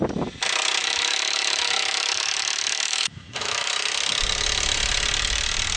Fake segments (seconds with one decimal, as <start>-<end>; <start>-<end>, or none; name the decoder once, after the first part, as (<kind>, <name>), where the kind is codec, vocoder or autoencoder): 0.8-3.7 (autoencoder, DAC-VAE)